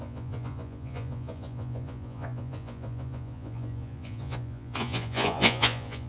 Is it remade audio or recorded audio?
remade